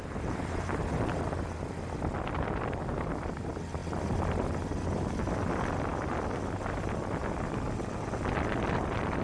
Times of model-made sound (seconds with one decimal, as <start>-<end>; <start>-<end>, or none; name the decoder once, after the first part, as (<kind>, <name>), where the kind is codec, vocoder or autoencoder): none